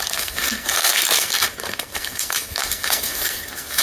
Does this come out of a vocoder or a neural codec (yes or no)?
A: yes